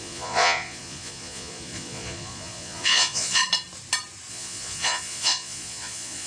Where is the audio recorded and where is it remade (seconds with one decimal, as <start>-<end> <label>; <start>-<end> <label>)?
0.0-3.4 remade; 3.4-4.3 recorded; 4.3-6.3 remade